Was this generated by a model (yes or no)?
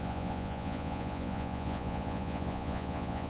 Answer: yes